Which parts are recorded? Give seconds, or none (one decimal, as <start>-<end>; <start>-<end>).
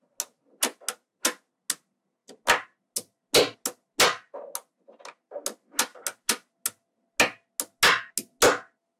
0.0-9.0